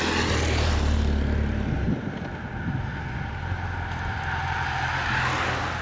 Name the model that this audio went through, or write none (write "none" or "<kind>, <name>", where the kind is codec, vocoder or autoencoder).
none